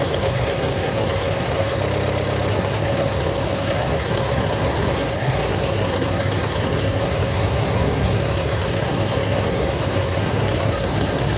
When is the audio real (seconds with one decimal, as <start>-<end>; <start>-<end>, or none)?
1.8-2.5